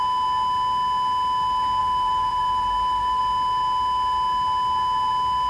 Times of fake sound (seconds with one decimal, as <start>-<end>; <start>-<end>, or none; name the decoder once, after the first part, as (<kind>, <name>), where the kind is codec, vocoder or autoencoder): 1.8-3.2 (vocoder, BigVGAN v2)